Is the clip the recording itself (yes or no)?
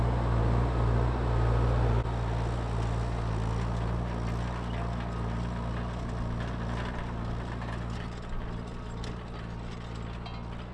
yes